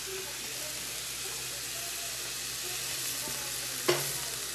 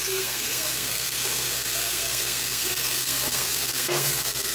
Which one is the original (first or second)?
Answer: first